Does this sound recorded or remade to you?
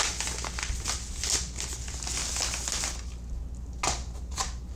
recorded